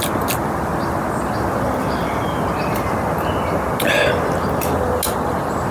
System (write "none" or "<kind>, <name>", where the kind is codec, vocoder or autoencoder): none